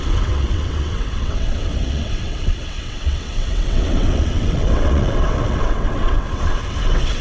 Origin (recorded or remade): remade